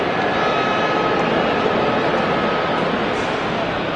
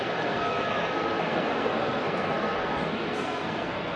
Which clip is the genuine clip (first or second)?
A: first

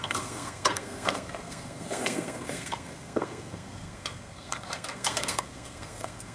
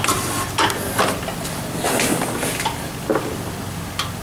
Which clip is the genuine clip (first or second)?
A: second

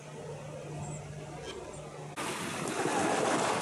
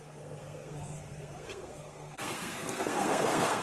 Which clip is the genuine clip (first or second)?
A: first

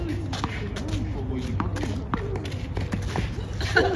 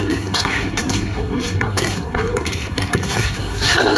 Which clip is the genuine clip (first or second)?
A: first